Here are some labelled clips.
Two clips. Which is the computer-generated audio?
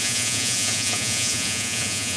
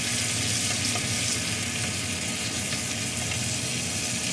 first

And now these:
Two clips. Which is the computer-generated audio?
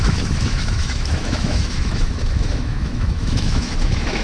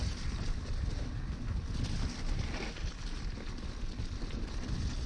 first